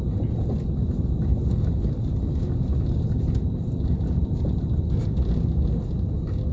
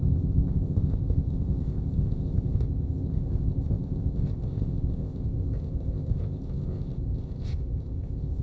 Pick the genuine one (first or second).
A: first